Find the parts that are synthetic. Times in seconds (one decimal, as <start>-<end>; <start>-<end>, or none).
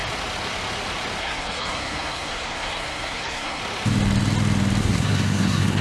1.2-3.6; 4.8-5.8